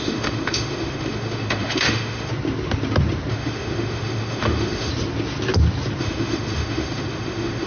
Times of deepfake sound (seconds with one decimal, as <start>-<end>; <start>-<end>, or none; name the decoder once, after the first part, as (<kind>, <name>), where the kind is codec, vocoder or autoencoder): 0.0-2.3 (autoencoder, DAC-VAE); 3.3-4.9; 6.0-7.7